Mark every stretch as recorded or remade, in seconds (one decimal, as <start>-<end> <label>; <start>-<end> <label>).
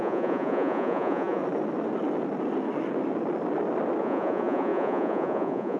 0.0-1.4 remade; 1.4-4.0 recorded; 4.0-5.8 remade